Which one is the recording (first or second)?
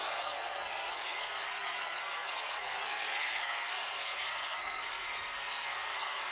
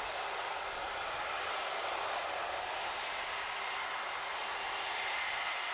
second